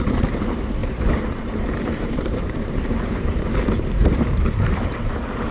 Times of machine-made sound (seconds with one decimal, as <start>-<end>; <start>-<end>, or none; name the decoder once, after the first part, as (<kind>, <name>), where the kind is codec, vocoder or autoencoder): 0.0-5.5 (vocoder, BigVGAN v2)